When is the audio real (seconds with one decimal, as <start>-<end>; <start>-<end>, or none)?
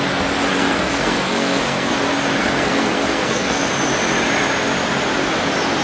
0.0-0.5; 1.9-2.4; 3.7-5.8